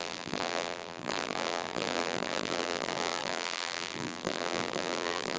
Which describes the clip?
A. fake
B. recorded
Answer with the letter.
A